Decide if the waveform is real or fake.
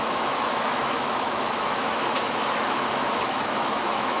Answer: fake